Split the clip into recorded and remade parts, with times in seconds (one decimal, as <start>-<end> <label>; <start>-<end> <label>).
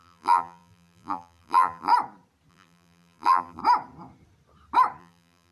0.0-1.9 remade; 1.9-2.5 recorded; 2.5-3.6 remade; 3.6-5.0 recorded; 5.0-5.5 remade